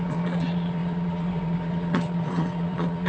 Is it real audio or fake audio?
fake